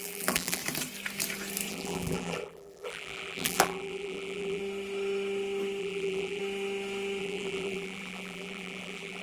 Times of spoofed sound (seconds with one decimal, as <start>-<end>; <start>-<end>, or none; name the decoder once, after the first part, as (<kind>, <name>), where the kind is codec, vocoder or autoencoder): 0.0-0.6 (vocoder, BigVGAN v2); 1.7-4.6; 5.8-6.4; 7.2-9.2